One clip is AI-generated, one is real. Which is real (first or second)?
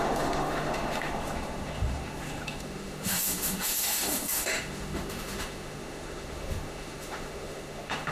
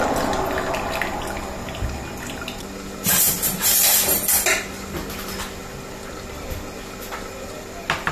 second